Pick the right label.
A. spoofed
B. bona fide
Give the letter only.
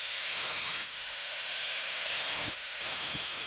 A